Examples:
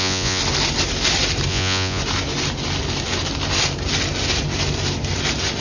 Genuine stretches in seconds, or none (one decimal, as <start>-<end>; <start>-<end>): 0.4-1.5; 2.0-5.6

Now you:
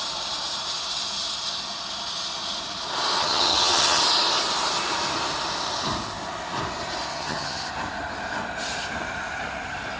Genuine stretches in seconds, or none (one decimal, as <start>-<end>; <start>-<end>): 0.0-3.2; 4.0-7.1; 7.7-10.0

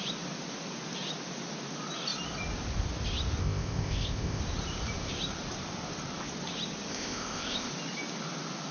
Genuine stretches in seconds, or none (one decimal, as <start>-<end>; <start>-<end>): 0.0-3.4; 4.4-6.9; 7.7-8.7

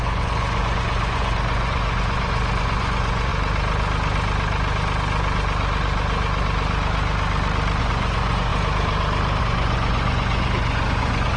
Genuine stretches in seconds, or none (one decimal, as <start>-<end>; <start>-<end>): 3.3-7.8; 8.5-9.4

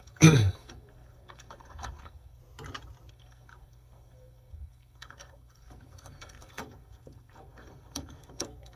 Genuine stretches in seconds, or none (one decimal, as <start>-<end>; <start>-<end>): 2.4-3.1

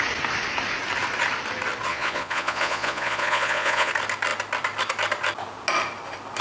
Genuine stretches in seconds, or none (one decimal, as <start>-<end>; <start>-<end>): 0.0-1.9; 3.9-6.4

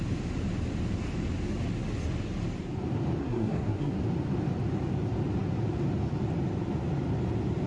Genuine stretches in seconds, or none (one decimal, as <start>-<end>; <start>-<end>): 0.0-3.2; 3.9-7.7

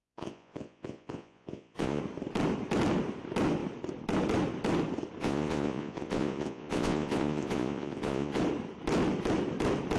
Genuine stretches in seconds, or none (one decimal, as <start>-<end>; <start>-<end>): 2.0-5.2; 8.4-10.0